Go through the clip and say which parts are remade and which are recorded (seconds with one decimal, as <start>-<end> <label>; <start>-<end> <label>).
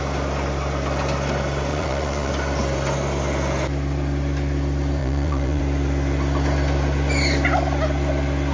0.0-1.7 recorded; 1.7-2.3 remade; 2.3-5.0 recorded; 5.0-5.6 remade; 5.6-8.5 recorded